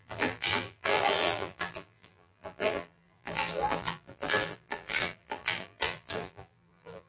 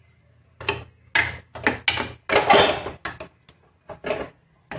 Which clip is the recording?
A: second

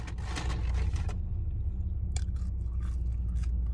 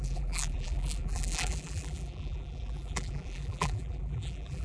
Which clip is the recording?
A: first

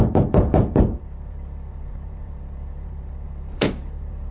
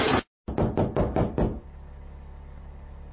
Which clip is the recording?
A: second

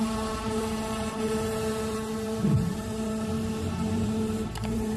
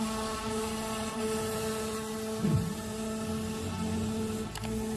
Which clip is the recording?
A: second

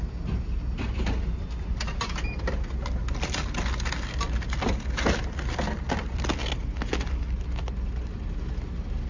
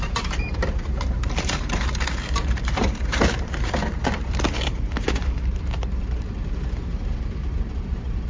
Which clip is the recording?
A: first